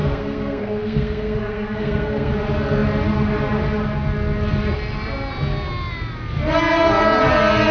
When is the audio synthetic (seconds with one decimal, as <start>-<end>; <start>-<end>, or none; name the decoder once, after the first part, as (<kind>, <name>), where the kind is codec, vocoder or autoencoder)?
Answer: 0.0-2.3 (codec, SNAC)